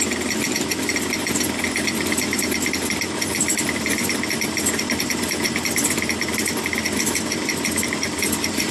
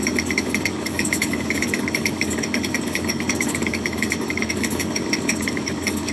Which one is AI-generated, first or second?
second